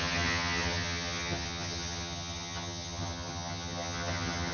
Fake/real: fake